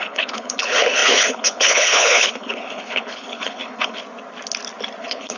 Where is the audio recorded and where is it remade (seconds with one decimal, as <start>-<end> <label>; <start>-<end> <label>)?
0.0-4.0 remade; 4.0-5.0 recorded; 5.0-5.4 remade